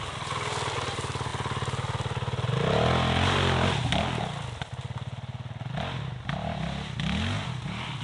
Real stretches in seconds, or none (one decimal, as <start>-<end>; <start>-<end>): 0.0-8.0